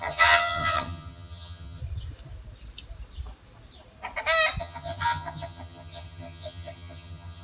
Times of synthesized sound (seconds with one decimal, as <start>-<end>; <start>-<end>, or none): 0.0-1.8; 4.6-7.4